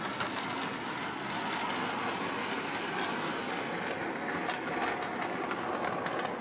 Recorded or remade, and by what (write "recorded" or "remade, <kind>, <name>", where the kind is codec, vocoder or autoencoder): recorded